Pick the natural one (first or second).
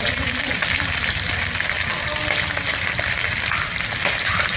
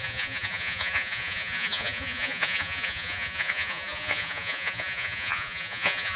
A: first